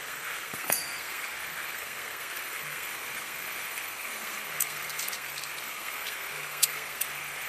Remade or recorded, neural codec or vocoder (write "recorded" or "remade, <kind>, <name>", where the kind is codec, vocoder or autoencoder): remade, codec, SNAC